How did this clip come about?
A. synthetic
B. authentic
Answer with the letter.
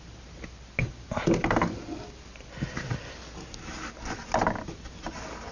B